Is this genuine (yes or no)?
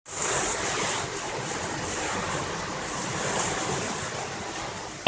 yes